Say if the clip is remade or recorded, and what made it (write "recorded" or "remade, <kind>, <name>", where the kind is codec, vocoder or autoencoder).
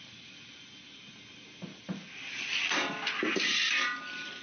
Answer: recorded